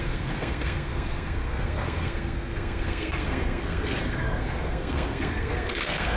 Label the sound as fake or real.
fake